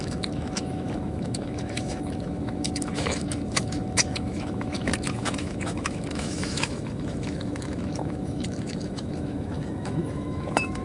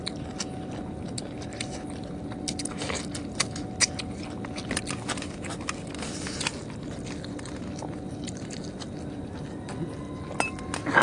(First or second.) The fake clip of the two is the first